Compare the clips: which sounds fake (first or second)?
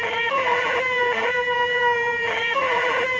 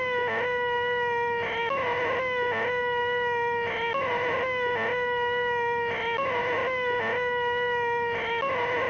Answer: first